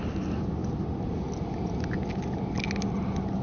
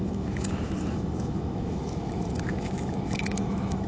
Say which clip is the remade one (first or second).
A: second